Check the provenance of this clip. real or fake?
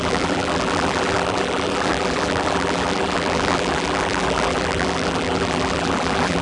fake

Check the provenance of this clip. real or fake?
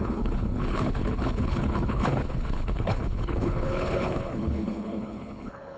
fake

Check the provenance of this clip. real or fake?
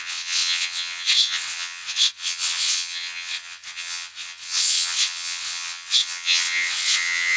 fake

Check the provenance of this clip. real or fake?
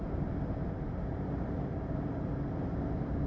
real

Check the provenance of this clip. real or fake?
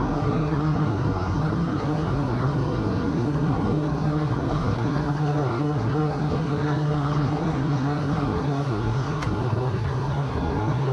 fake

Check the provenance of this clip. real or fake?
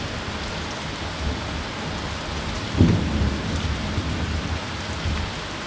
real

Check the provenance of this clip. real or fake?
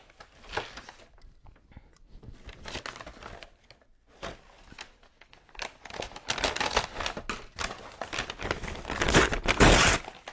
real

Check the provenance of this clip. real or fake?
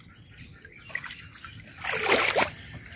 real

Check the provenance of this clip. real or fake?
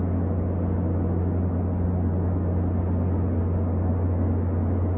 real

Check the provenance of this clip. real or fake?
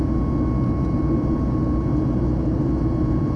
real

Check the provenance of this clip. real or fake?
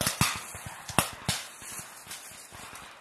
real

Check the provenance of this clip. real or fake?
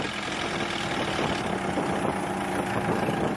real